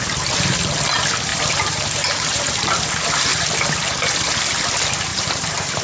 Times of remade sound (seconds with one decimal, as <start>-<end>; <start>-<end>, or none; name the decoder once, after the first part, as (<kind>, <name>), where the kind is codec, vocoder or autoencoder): 1.3-2.4 (vocoder, BigVGAN v2); 5.1-5.8

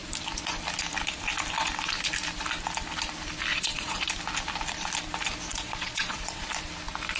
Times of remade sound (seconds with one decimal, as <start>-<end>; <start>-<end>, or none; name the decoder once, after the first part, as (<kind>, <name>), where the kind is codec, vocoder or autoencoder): 3.5-4.0 (vocoder, Vocos); 5.5-6.4

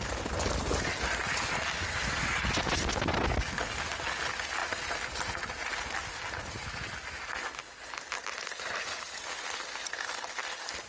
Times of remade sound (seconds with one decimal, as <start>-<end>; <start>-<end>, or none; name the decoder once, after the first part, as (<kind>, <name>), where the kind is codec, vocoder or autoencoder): none

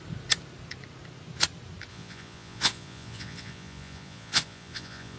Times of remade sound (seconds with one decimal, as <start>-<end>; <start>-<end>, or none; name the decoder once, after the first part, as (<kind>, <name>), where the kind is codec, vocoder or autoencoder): 1.9-5.2 (vocoder, Vocos)

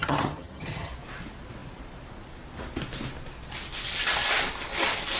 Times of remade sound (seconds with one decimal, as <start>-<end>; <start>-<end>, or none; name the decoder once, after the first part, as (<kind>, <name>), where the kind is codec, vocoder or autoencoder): 0.0-0.9 (vocoder, HiFi-GAN)

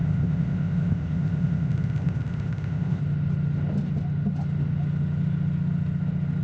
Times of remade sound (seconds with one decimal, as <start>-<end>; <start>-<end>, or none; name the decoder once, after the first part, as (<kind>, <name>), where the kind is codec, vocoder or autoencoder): 0.0-3.0 (codec, ZipCodec)

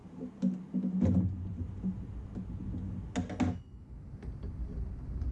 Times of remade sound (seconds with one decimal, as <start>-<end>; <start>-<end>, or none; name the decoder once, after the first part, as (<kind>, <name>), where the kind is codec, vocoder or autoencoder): none

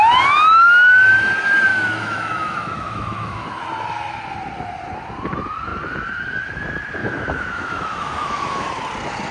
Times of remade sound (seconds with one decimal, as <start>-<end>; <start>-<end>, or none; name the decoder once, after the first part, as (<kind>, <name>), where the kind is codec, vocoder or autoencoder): 1.7-3.6 (autoencoder, DAC-VAE); 7.0-8.7